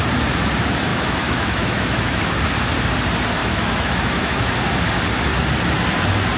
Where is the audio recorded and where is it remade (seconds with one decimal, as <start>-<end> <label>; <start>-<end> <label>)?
0.0-0.9 recorded; 0.9-2.2 remade; 2.2-3.4 recorded; 3.4-4.5 remade; 4.5-6.4 recorded